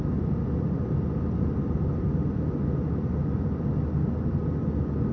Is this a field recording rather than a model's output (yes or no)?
yes